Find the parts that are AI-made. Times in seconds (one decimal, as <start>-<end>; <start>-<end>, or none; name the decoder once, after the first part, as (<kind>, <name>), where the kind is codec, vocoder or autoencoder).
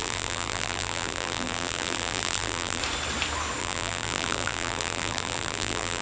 0.0-2.8 (vocoder, BigVGAN v2); 3.6-6.0